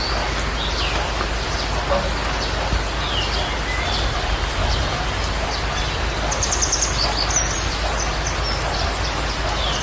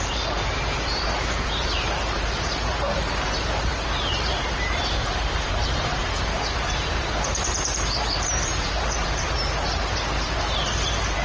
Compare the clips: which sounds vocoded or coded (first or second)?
second